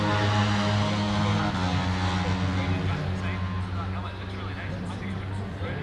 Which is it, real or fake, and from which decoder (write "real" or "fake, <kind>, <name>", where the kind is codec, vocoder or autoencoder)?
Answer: real